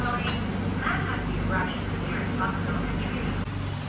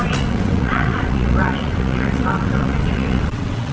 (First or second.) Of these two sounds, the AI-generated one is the second